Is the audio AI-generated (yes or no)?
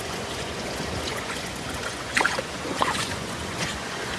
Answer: yes